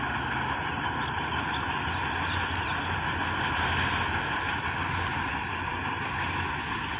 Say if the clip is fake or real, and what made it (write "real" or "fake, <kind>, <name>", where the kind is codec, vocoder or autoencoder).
real